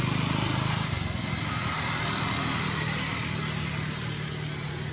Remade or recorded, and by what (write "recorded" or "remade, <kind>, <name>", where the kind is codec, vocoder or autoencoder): recorded